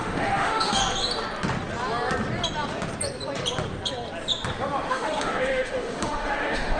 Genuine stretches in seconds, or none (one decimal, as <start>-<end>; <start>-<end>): 0.8-4.9